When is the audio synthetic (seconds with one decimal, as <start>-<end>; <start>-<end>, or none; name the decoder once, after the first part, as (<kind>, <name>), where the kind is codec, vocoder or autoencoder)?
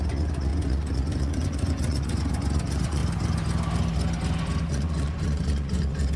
0.0-3.0 (vocoder, Vocos); 4.7-6.2